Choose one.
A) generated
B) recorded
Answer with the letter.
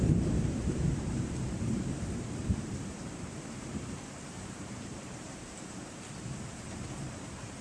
A